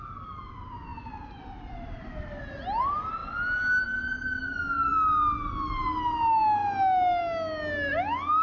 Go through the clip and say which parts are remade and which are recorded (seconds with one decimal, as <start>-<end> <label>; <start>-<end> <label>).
0.0-8.4 recorded